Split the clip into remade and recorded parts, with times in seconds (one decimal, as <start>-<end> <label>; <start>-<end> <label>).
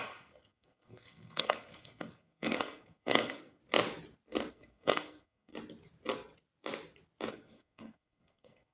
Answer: 0.0-3.6 remade; 3.6-4.5 recorded; 4.5-5.5 remade; 5.5-7.3 recorded; 7.3-8.7 remade